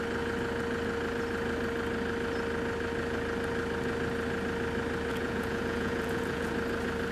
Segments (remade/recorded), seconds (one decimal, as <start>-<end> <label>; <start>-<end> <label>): 0.0-5.1 recorded; 5.1-6.5 remade; 6.5-7.1 recorded